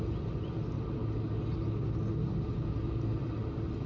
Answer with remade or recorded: recorded